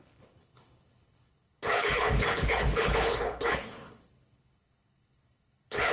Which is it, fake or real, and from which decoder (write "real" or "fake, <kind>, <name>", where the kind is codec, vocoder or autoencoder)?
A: fake, codec, HILCodec